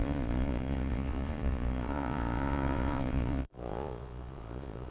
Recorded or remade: remade